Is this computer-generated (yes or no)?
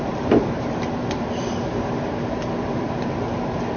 yes